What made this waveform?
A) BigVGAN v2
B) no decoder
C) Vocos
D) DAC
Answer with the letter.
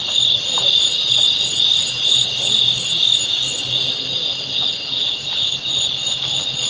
B